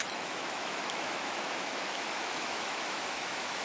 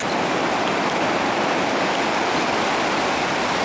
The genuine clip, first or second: second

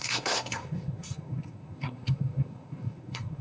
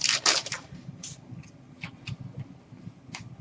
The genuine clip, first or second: second